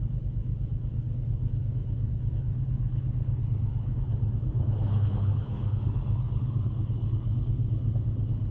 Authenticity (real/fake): fake